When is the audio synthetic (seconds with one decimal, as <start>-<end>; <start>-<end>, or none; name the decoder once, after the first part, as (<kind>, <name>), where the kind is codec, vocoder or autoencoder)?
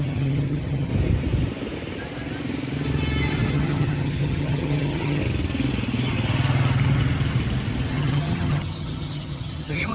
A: 0.0-0.9 (vocoder, HiFi-GAN); 3.5-5.2; 7.9-9.9